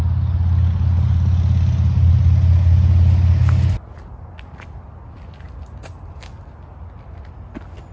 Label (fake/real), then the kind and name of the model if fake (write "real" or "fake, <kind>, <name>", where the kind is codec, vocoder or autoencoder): real